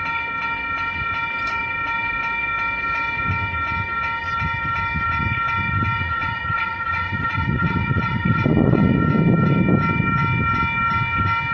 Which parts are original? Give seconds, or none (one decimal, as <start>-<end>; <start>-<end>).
0.0-6.0; 9.0-11.5